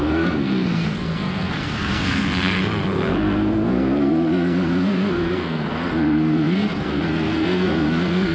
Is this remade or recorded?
remade